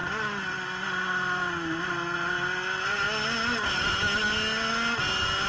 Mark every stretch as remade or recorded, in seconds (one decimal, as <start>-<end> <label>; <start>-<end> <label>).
0.0-5.5 recorded